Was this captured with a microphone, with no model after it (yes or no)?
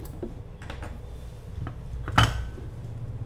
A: yes